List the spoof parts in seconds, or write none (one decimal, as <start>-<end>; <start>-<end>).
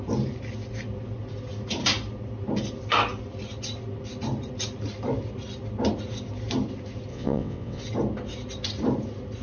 7.1-7.8